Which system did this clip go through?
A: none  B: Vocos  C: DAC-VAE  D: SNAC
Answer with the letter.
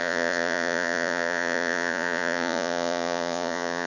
B